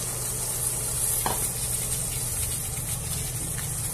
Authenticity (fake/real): real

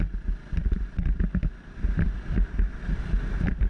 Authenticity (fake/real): real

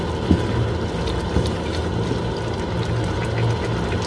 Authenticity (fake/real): real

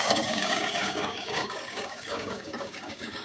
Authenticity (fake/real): fake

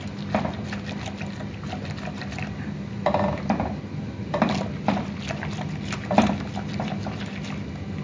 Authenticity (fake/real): real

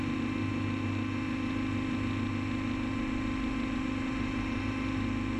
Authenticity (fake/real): real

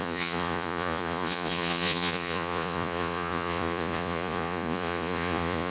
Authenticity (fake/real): fake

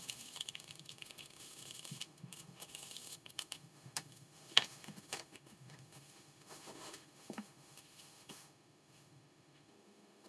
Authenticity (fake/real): fake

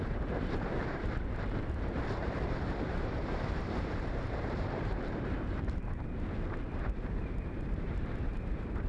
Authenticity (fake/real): fake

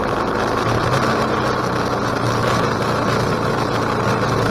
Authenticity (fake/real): real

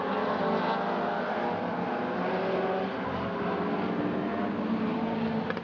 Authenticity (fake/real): real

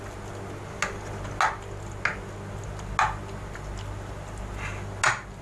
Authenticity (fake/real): real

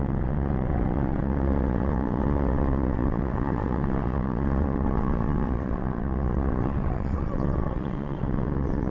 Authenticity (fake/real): fake